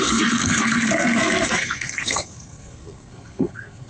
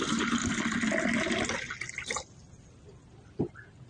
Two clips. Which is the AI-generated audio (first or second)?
first